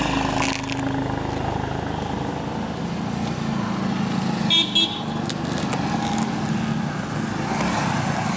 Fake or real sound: real